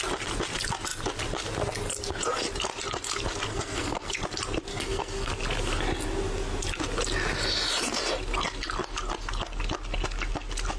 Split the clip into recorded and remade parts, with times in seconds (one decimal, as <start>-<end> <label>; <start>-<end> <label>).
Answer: 0.0-3.5 recorded; 3.5-4.1 remade; 4.1-4.7 recorded; 4.7-5.3 remade; 5.3-10.8 recorded